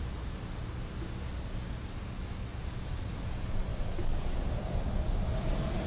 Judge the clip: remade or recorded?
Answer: recorded